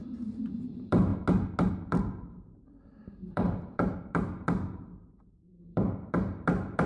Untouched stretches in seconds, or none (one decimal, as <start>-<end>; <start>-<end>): 1.1-1.7